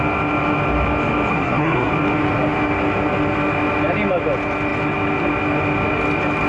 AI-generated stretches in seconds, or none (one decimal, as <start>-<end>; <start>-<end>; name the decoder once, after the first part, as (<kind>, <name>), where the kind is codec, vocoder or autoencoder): 1.3-1.9 (codec, SNAC)